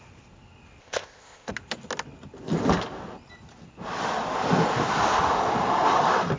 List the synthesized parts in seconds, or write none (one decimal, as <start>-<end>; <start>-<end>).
0.8-1.5